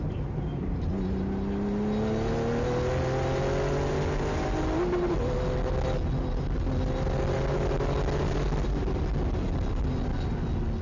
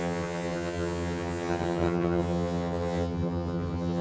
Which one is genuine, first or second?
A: first